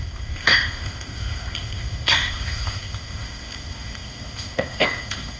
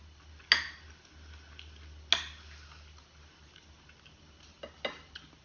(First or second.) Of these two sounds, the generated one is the first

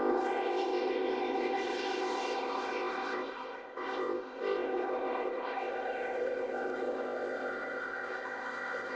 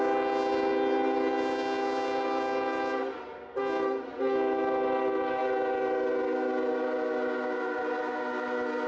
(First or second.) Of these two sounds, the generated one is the first